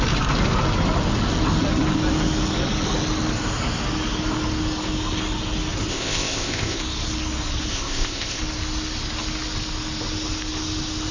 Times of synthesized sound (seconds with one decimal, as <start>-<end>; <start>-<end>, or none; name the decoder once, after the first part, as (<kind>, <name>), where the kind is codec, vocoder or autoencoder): 5.9-6.8 (codec, ZipCodec); 7.7-8.4